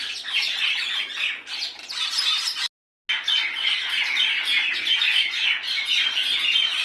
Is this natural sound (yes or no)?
yes